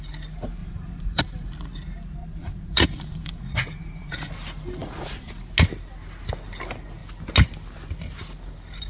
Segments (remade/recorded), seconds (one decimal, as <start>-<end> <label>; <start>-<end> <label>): 0.0-0.6 recorded; 0.6-1.2 remade; 1.2-2.2 recorded; 2.2-4.3 remade; 4.3-4.8 recorded; 4.8-5.4 remade; 5.4-8.9 recorded